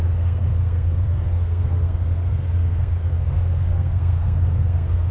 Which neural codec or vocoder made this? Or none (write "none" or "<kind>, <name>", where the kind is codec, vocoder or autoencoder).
codec, SNAC